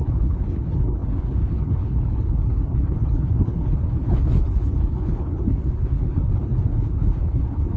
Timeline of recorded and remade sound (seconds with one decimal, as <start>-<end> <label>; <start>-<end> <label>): 0.0-7.8 remade